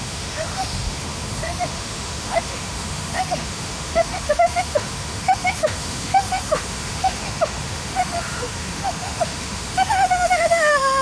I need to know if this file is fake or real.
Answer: fake